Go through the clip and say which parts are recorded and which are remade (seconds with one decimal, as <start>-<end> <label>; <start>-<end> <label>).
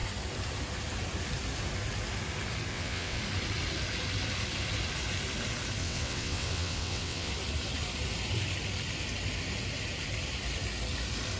0.0-2.7 recorded; 2.7-3.2 remade; 3.2-5.8 recorded; 5.8-7.3 remade; 7.3-11.4 recorded